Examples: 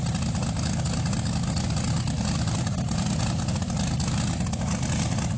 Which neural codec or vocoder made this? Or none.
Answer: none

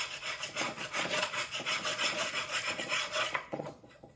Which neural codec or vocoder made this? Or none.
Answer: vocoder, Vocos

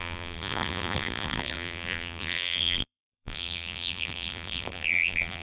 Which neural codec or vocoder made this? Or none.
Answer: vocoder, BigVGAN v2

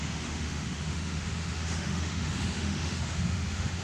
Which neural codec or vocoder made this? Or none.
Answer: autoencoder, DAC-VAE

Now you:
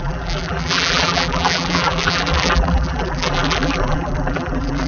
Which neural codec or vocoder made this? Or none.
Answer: vocoder, BigVGAN v2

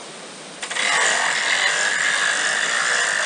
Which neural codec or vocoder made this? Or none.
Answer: none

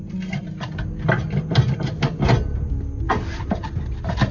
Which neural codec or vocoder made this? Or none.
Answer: none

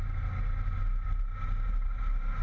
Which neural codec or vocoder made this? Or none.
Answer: none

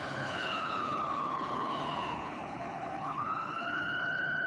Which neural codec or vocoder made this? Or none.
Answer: codec, HILCodec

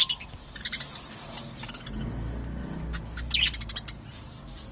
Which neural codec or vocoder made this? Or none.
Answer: none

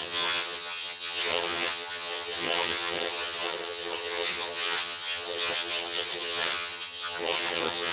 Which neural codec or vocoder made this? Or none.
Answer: vocoder, HiFi-GAN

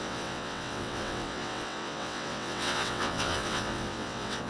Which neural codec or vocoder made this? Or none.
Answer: vocoder, WaveNeXt